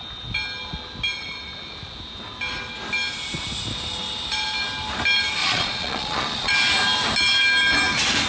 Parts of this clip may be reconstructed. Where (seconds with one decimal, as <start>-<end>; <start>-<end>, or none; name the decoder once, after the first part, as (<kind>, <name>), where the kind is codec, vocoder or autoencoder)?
5.4-6.5 (vocoder, Vocos)